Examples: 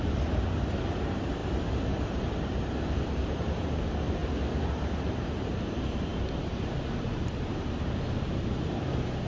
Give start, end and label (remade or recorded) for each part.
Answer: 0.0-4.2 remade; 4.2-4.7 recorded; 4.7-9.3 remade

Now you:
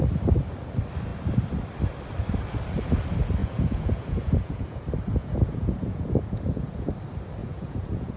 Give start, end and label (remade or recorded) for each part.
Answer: 0.0-3.4 recorded; 3.4-4.8 remade; 4.8-5.2 recorded; 5.2-6.9 remade; 6.9-7.4 recorded; 7.4-8.2 remade

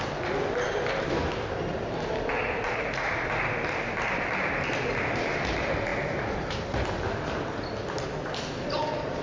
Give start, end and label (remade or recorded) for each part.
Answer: 0.0-9.2 recorded

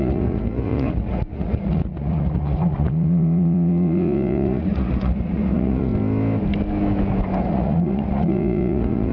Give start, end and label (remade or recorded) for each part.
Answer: 0.0-5.9 remade; 5.9-7.4 recorded; 7.4-9.1 remade